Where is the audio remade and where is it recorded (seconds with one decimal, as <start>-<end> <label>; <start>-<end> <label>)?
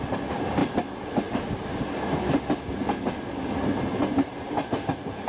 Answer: 0.0-5.3 recorded